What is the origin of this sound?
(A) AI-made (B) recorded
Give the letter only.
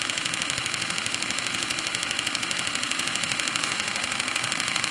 A